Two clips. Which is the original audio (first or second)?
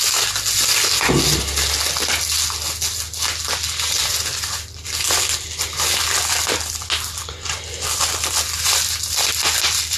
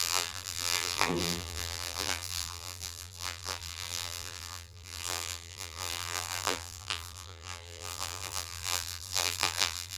first